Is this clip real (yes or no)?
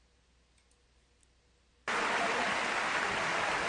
yes